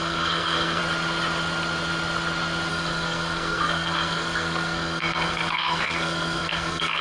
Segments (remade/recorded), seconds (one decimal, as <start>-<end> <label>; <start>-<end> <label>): 0.0-0.8 remade; 0.8-2.7 recorded; 2.7-7.0 remade